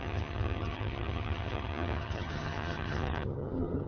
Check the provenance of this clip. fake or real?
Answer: fake